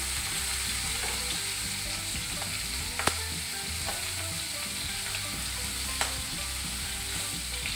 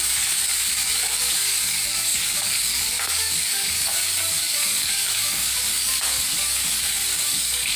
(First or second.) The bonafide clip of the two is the first